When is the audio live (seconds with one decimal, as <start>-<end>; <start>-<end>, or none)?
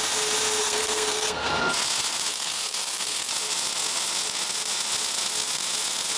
0.0-0.6; 1.5-2.3; 3.3-6.2